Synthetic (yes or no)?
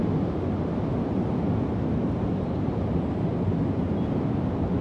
no